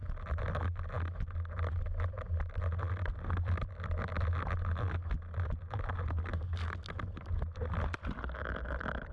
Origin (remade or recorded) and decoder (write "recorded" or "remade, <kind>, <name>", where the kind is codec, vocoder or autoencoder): recorded